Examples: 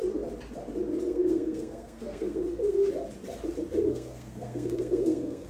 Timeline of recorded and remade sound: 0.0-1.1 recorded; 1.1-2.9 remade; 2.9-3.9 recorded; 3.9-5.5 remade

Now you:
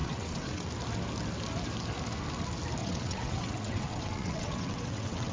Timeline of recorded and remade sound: 0.0-0.7 remade; 0.7-2.8 recorded; 2.8-5.3 remade

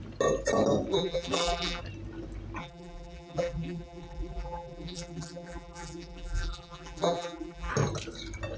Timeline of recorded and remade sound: 0.0-0.9 recorded; 0.9-1.8 remade; 1.8-2.6 recorded; 2.6-7.7 remade; 7.7-8.6 recorded